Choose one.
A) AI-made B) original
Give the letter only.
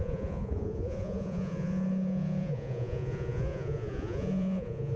A